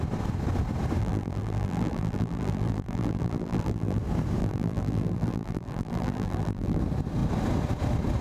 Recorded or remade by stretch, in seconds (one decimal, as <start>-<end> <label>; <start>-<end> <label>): 0.0-1.0 recorded; 1.0-4.0 remade; 4.0-4.4 recorded; 4.4-6.8 remade; 6.8-8.2 recorded